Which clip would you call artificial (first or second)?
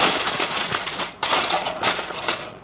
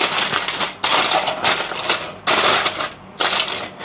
first